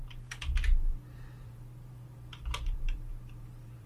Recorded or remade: remade